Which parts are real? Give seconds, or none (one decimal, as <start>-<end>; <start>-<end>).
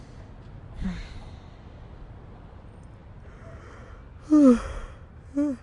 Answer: 0.0-5.6